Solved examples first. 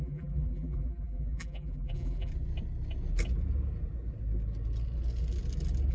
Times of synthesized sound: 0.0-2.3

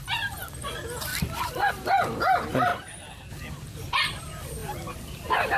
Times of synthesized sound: 1.1-1.7; 2.7-3.3

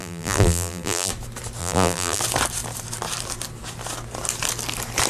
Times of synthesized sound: 0.0-1.1; 1.6-2.2

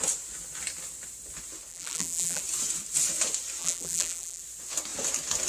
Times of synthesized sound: 1.7-2.4; 3.6-4.4